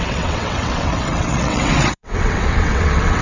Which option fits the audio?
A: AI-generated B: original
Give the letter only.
A